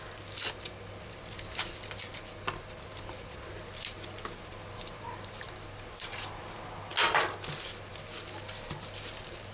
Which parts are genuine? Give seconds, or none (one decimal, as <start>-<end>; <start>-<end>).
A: 0.0-9.5